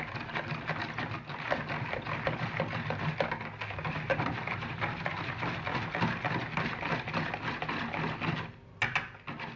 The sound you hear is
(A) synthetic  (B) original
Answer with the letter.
B